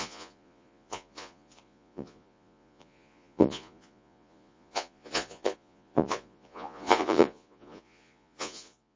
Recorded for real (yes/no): no